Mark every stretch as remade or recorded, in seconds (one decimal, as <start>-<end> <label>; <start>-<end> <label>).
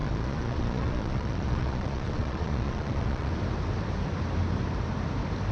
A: 0.0-3.3 remade; 3.3-5.5 recorded